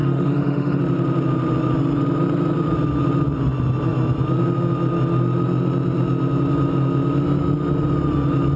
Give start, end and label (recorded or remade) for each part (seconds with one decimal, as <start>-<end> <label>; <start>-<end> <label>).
0.0-0.8 remade; 0.8-8.6 recorded